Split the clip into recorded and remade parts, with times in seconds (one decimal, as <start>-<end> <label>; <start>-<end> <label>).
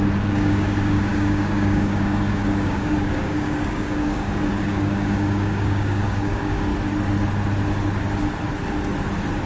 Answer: 0.0-6.7 remade; 6.7-9.5 recorded